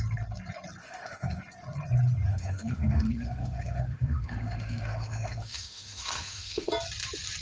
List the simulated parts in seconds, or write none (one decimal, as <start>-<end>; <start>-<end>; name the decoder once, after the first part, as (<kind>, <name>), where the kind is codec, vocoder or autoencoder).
0.8-1.4 (autoencoder, DAC-VAE); 2.3-6.7